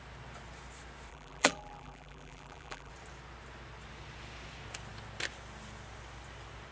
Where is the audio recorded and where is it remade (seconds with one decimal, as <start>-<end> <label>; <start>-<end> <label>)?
0.0-1.1 recorded; 1.1-2.9 remade; 2.9-6.7 recorded